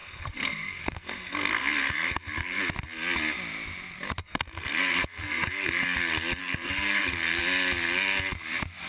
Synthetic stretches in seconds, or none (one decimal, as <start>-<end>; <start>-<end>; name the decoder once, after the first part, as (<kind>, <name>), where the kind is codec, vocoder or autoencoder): 0.0-2.6 (codec, SNAC); 4.2-5.8; 6.4-7.4